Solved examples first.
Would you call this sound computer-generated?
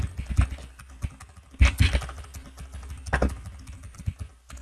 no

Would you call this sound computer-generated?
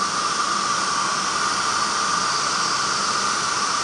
no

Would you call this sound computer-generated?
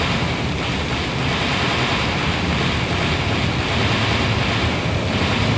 no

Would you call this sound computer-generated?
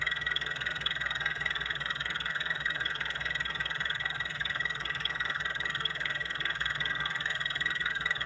yes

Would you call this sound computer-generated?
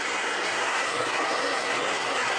yes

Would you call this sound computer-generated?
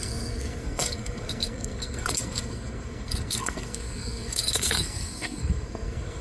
yes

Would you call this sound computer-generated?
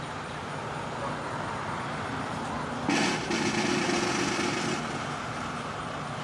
no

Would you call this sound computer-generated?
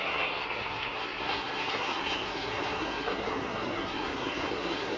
yes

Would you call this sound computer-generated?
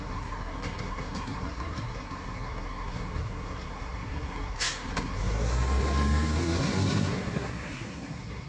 yes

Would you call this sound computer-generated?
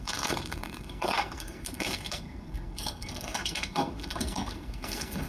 yes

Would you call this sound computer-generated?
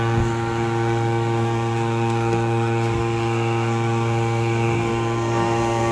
yes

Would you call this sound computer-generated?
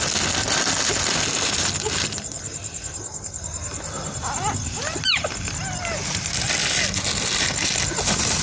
no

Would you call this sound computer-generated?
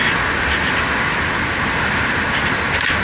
no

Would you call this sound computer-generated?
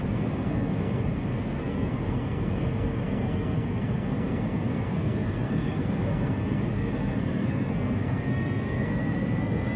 yes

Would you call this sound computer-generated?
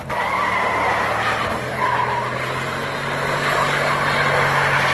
no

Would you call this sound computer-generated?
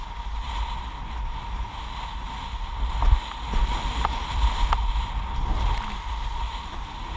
no